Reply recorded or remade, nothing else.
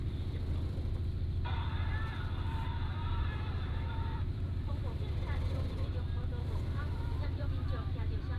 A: remade